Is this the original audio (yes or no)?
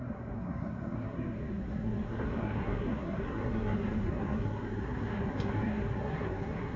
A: no